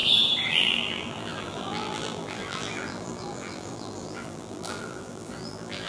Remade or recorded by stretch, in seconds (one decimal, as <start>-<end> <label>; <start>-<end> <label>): 0.0-0.5 recorded; 0.5-5.9 remade